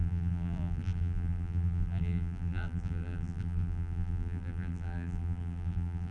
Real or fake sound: fake